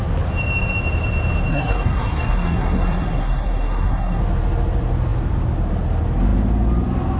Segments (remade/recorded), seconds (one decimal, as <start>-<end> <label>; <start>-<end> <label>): 0.0-1.5 recorded; 1.5-4.2 remade; 4.2-7.2 recorded